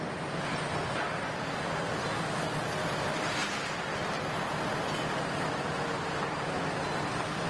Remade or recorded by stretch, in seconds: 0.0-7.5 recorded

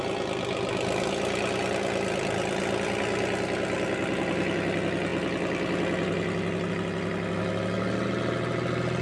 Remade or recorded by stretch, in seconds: 0.0-9.0 recorded

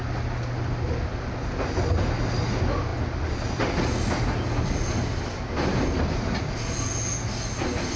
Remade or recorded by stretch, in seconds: 0.0-8.0 recorded

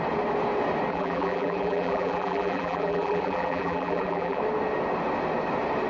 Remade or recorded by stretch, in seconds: 0.0-0.9 recorded; 0.9-4.4 remade; 4.4-5.9 recorded